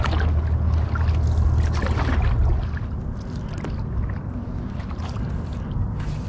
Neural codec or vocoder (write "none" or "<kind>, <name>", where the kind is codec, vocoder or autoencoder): none